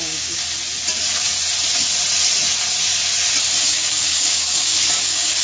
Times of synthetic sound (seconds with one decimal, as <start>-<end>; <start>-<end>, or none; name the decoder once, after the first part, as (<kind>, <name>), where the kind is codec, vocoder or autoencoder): 0.0-0.4 (codec, DAC); 3.6-5.4